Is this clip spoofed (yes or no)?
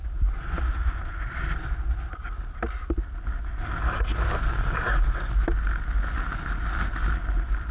no